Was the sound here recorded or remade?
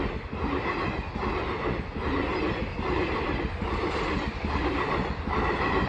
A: recorded